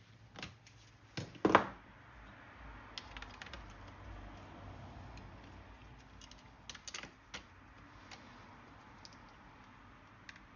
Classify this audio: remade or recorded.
recorded